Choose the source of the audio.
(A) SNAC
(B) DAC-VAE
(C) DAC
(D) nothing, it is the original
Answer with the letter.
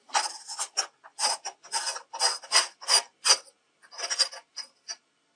D